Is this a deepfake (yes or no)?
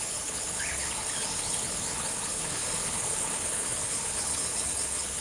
yes